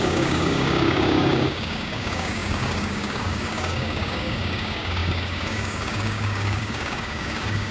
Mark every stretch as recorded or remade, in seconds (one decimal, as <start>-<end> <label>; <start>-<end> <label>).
0.0-7.7 remade